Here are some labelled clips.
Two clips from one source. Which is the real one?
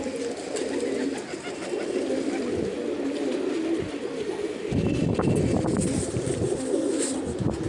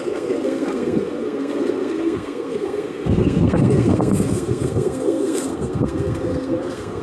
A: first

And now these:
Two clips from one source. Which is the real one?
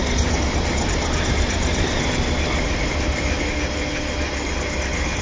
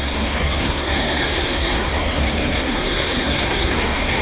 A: first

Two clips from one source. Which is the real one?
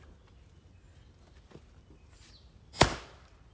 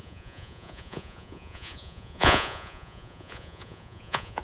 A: first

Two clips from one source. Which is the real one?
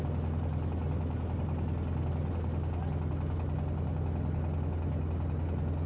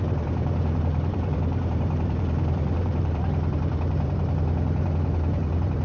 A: first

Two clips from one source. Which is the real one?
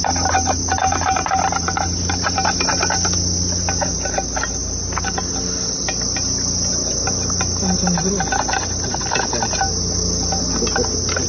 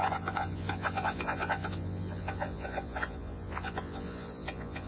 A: first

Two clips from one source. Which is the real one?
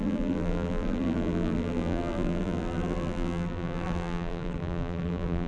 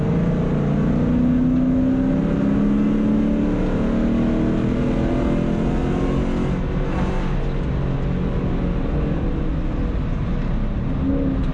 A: second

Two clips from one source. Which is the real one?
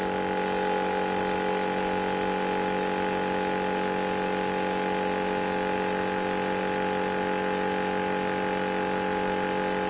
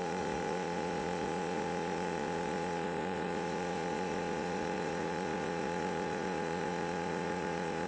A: first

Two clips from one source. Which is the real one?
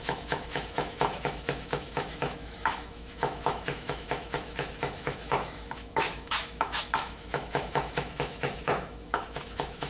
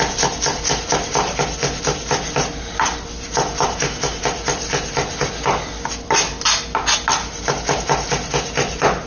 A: second